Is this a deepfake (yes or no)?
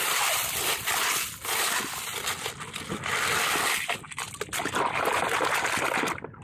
no